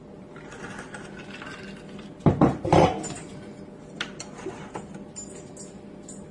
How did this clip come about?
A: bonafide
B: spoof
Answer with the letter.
A